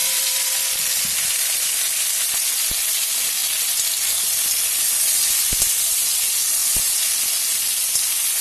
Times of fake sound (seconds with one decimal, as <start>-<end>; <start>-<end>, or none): 0.0-0.7